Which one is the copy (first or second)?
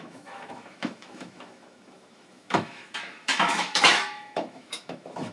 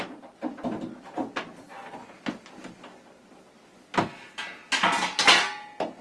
first